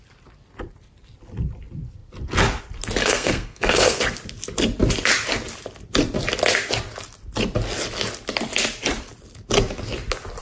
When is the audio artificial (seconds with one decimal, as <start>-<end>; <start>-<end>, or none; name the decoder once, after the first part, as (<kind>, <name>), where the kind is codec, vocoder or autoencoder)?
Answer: 3.0-4.0 (codec, SNAC)